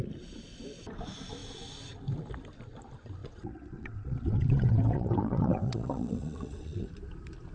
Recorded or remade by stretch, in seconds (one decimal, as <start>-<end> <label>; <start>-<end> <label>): 0.0-3.2 recorded; 3.2-6.9 remade; 6.9-7.5 recorded